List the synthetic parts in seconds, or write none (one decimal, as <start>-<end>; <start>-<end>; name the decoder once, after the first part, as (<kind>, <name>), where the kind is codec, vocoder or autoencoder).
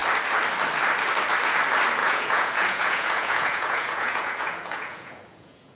2.0-5.8 (vocoder, Vocos)